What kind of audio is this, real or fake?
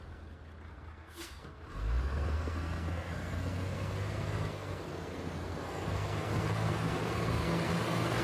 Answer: fake